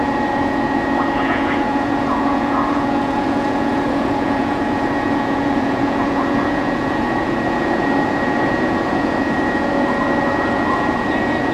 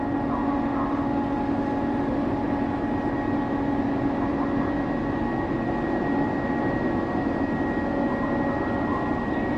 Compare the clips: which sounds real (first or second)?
second